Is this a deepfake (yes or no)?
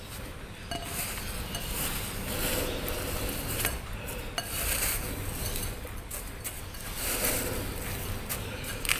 no